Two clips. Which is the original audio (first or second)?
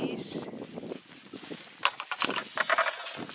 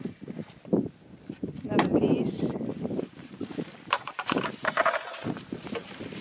first